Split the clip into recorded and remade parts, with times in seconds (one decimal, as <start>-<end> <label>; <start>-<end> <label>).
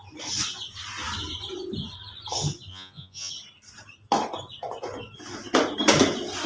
0.0-2.7 recorded; 2.7-3.3 remade; 3.3-6.5 recorded